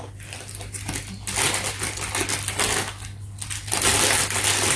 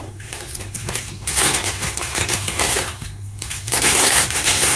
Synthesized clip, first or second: second